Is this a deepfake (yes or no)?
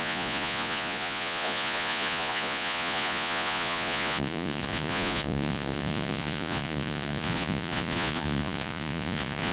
yes